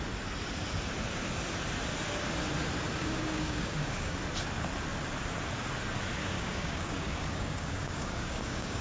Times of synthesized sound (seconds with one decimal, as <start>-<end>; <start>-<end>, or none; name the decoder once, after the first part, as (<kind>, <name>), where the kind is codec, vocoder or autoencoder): 3.0-4.2 (codec, DAC); 6.2-8.8